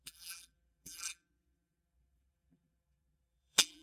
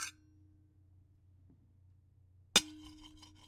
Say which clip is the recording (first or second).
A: second